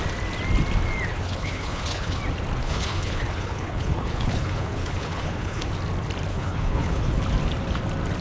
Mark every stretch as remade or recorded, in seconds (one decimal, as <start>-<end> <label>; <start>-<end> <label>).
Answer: 0.0-1.1 recorded; 1.1-2.2 remade; 2.2-2.6 recorded; 2.6-5.7 remade; 5.7-6.3 recorded; 6.3-7.2 remade; 7.2-8.2 recorded